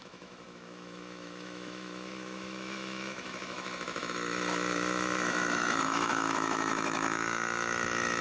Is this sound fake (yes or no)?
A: yes